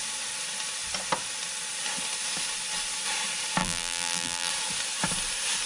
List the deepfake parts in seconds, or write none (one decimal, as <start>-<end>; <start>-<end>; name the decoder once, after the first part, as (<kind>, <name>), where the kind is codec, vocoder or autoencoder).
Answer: 3.6-4.5 (vocoder, BigVGAN v2)